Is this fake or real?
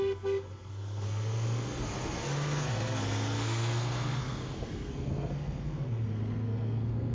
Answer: fake